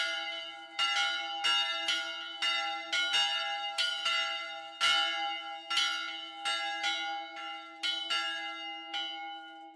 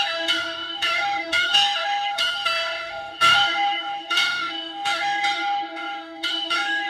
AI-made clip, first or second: second